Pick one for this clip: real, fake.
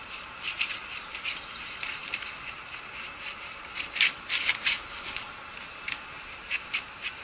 fake